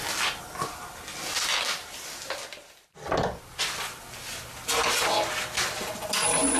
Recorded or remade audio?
recorded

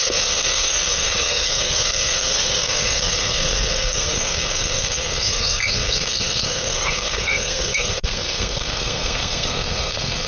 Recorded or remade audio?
remade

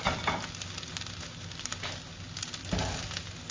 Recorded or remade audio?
recorded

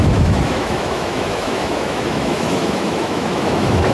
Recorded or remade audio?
remade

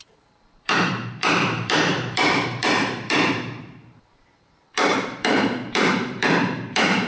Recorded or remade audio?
remade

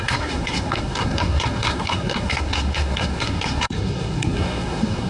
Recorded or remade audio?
remade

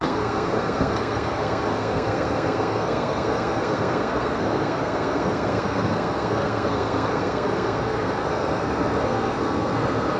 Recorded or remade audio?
remade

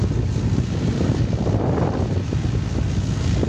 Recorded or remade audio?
recorded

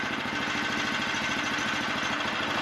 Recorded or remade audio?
recorded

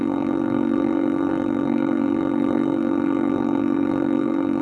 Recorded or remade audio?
remade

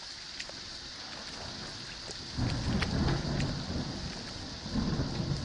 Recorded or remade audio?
recorded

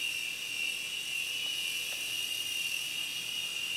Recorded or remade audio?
recorded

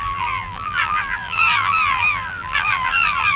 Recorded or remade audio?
remade